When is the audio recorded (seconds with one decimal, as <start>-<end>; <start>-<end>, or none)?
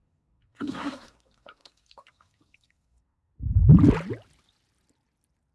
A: 3.3-5.5